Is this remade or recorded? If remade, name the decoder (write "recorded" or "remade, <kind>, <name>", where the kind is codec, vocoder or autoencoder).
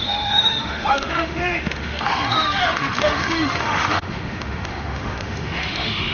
remade, autoencoder, DAC-VAE